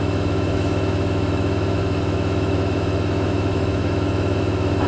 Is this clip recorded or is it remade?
remade